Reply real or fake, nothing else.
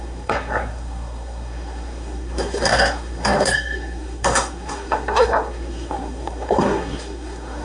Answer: fake